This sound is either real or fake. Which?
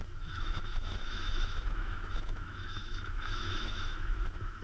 fake